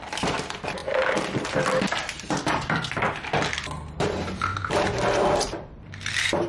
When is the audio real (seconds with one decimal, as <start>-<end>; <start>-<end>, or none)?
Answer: 4.5-6.5